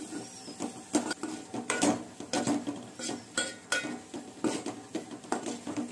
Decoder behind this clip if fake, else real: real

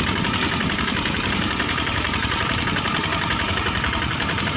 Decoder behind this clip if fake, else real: fake, vocoder, BigVGAN v2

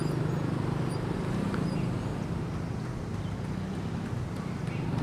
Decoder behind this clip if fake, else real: real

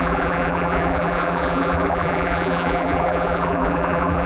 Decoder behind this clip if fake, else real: fake, vocoder, BigVGAN v2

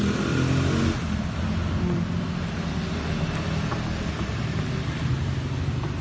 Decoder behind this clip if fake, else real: real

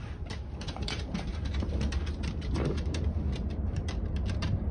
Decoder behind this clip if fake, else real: fake, vocoder, BigVGAN v2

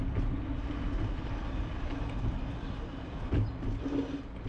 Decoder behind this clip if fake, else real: real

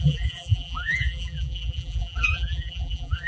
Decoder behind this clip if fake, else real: fake, vocoder, BigVGAN v2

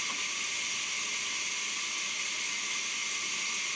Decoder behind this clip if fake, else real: real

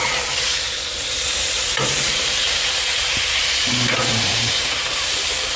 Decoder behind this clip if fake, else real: fake, vocoder, BigVGAN v2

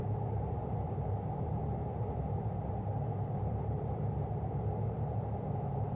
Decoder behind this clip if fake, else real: fake, vocoder, BigVGAN v2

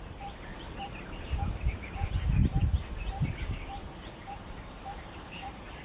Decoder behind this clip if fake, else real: fake, vocoder, BigVGAN v2